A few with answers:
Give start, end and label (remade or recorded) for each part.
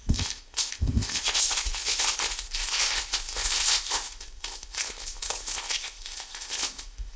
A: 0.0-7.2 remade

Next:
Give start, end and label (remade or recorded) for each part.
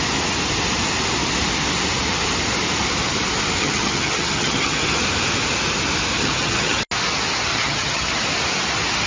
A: 0.0-3.6 recorded; 3.6-5.0 remade; 5.0-6.1 recorded; 6.1-6.8 remade; 6.8-7.5 recorded; 7.5-8.1 remade; 8.1-9.1 recorded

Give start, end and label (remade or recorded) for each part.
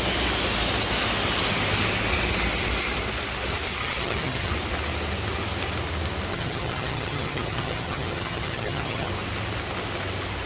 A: 0.0-3.8 recorded; 3.8-4.5 remade; 4.5-6.3 recorded; 6.3-9.1 remade; 9.1-10.5 recorded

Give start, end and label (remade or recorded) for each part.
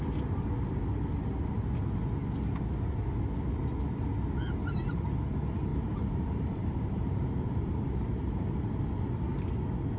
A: 0.0-5.7 recorded; 5.7-8.7 remade; 8.7-10.0 recorded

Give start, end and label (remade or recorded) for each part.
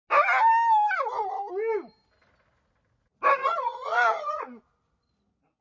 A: 0.0-3.4 recorded; 3.4-4.6 remade; 4.6-5.6 recorded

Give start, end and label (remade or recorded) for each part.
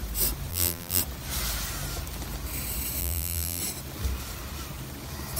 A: 0.0-0.5 recorded; 0.5-1.0 remade; 1.0-3.0 recorded; 3.0-3.6 remade; 3.6-5.4 recorded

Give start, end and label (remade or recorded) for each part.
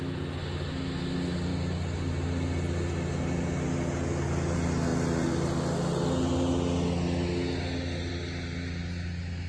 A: 0.0-9.5 recorded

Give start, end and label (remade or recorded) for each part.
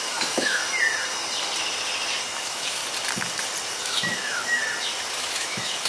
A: 0.0-0.6 remade; 0.6-2.4 recorded; 2.4-2.8 remade; 2.8-3.8 recorded; 3.8-4.6 remade; 4.6-5.2 recorded; 5.2-5.9 remade